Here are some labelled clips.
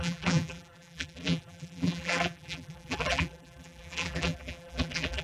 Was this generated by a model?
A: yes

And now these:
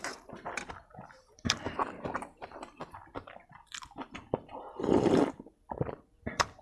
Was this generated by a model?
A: yes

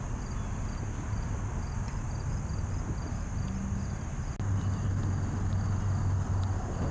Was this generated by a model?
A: no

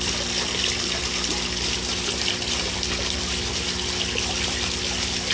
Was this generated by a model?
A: no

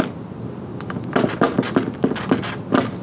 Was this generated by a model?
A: no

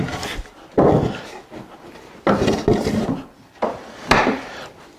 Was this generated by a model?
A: no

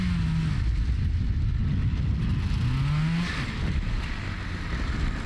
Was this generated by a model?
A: no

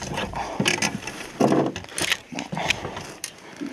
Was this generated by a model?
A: no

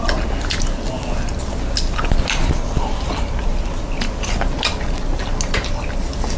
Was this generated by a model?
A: no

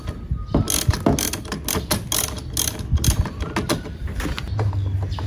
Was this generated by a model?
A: no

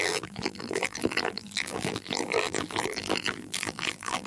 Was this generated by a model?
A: yes